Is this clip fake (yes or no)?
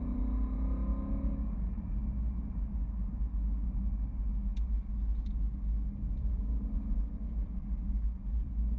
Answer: no